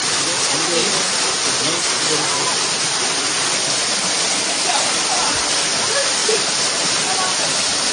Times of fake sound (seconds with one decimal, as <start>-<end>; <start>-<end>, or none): 6.2-6.9